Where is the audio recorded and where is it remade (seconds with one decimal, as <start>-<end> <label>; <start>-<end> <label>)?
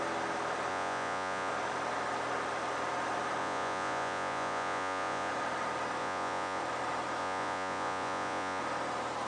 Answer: 0.0-0.7 recorded; 0.7-1.5 remade; 1.5-3.4 recorded; 3.4-5.3 remade; 5.3-6.0 recorded; 6.0-6.6 remade; 6.6-7.2 recorded; 7.2-8.6 remade; 8.6-9.3 recorded